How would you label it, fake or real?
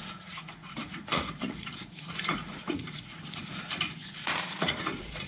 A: fake